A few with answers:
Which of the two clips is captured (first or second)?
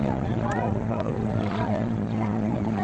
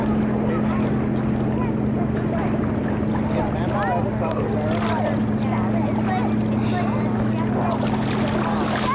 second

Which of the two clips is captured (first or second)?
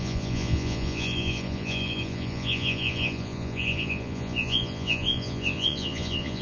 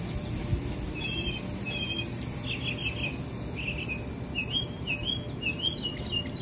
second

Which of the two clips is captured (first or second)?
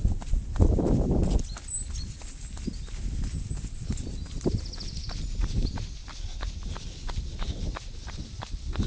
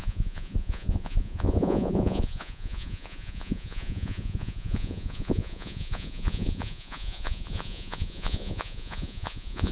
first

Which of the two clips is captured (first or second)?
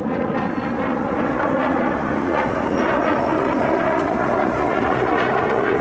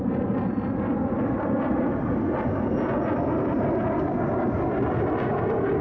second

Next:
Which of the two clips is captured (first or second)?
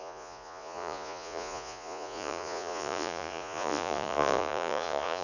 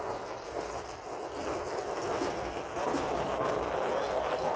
second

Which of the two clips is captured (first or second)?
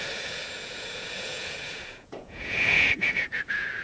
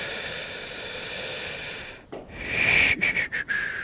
second